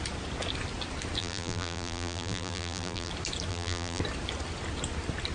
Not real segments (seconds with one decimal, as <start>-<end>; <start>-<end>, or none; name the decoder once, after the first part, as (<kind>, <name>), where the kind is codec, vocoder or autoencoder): 1.2-3.1 (vocoder, BigVGAN v2); 3.5-4.0